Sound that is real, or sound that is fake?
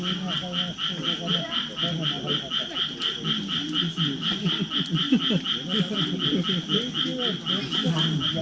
real